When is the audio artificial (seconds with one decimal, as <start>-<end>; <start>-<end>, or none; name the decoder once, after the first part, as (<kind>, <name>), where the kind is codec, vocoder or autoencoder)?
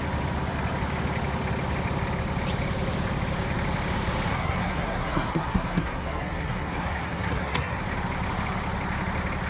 4.3-7.8 (codec, SNAC)